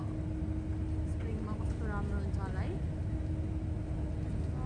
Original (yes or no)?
yes